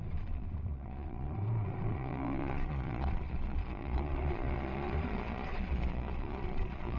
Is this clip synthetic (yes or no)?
yes